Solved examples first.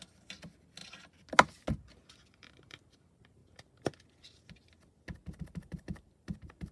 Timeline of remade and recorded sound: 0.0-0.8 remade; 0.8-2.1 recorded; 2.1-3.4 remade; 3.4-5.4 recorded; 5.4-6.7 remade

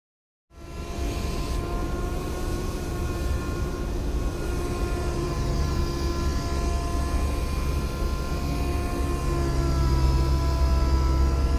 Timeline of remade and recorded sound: 0.0-1.8 recorded; 1.8-3.8 remade; 3.8-4.3 recorded; 4.3-5.8 remade; 5.8-11.6 recorded

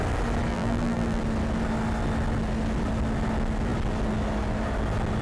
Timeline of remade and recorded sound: 0.0-0.5 recorded; 0.5-1.2 remade; 1.2-5.2 recorded